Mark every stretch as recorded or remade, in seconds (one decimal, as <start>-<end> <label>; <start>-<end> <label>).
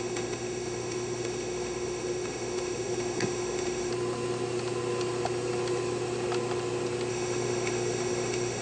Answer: 0.0-3.9 remade; 3.9-7.1 recorded; 7.1-8.6 remade